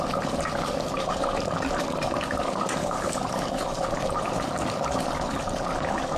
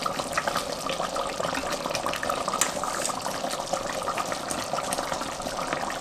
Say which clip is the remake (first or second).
first